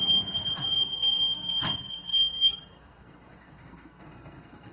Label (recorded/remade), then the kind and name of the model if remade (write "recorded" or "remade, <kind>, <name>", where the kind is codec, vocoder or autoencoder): remade, codec, SNAC